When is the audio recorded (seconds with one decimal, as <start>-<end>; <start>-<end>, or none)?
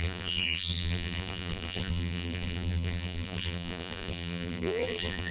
none